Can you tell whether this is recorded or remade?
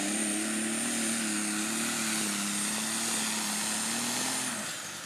recorded